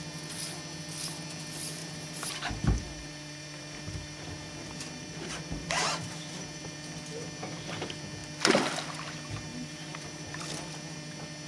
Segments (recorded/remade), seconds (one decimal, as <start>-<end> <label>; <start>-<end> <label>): 0.0-1.8 recorded; 1.8-6.4 remade; 6.4-9.5 recorded; 9.5-10.3 remade; 10.3-11.5 recorded